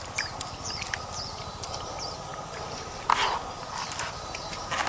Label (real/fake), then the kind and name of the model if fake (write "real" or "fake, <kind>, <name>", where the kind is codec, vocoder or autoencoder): real